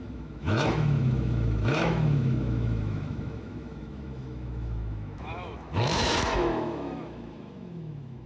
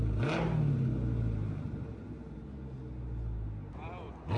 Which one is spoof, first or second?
first